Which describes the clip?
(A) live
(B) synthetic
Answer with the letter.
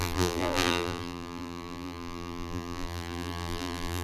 B